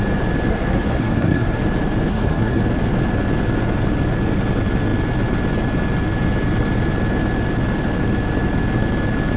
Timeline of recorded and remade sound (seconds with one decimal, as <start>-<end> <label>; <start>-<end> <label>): 0.0-0.5 recorded; 0.5-1.6 remade; 1.6-2.1 recorded; 2.1-2.6 remade; 2.6-9.4 recorded